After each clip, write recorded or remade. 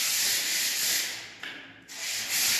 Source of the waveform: recorded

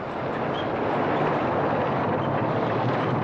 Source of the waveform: recorded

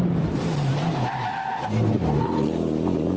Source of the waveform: recorded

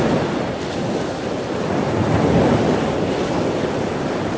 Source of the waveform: recorded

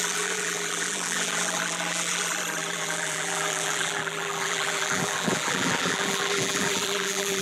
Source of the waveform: remade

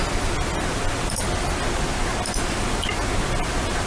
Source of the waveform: recorded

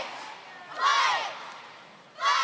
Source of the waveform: recorded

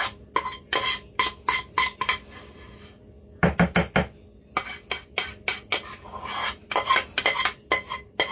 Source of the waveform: recorded